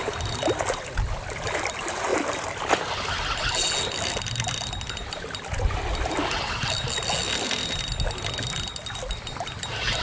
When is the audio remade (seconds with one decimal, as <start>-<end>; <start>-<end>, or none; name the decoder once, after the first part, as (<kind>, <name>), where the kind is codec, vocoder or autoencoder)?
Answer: none